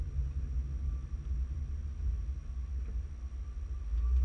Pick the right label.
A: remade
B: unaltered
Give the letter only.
B